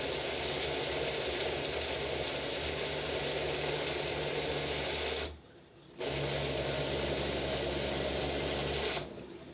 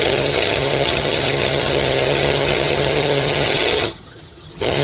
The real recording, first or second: first